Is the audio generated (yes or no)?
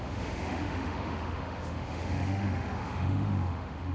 yes